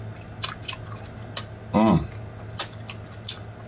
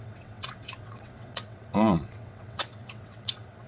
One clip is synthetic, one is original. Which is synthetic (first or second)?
second